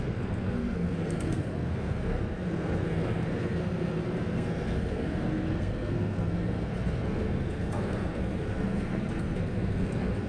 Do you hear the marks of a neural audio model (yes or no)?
yes